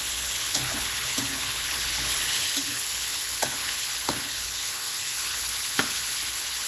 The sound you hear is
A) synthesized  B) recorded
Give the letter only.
A